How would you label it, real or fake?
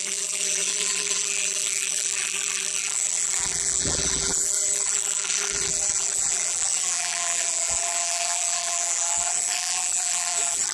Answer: fake